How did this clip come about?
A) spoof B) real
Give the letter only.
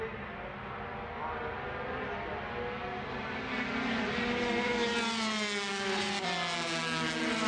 B